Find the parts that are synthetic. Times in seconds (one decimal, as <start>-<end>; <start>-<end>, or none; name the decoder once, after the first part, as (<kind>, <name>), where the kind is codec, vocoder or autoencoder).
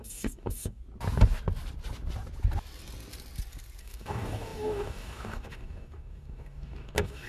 0.0-0.8 (codec, DAC); 3.8-7.3